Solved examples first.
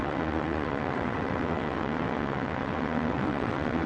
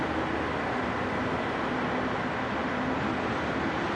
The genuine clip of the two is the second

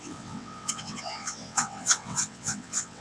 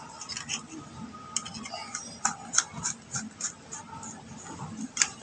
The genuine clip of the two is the second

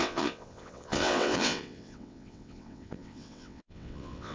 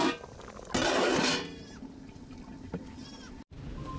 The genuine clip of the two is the second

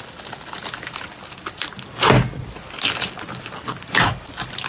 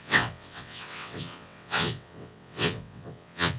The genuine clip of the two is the first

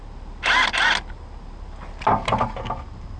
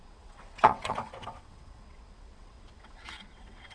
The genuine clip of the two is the first